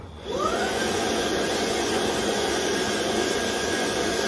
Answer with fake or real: fake